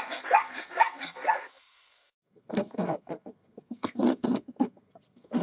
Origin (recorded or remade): remade